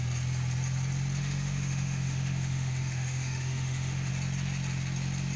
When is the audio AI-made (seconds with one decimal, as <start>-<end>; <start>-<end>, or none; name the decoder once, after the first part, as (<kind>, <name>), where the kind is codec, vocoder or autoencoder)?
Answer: 1.2-4.1 (autoencoder, DAC-VAE)